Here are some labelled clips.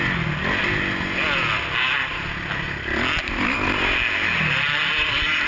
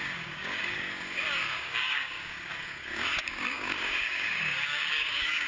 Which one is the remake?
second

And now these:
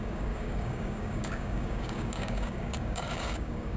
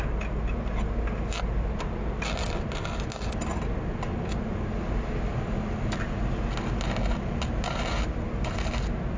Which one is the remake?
first